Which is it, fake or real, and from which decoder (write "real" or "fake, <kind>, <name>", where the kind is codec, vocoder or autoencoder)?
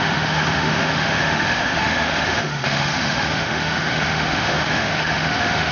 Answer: fake, autoencoder, DAC-VAE